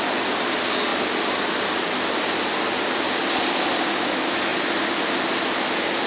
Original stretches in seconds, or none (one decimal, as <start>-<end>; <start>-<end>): 0.0-6.1